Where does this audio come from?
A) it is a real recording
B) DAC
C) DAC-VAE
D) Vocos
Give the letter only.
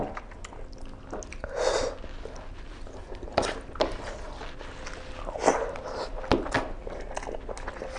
A